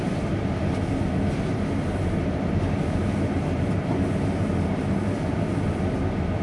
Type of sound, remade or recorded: recorded